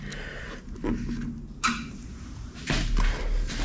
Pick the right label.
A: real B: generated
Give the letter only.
A